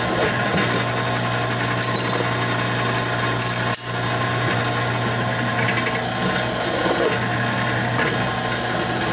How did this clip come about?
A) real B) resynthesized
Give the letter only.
A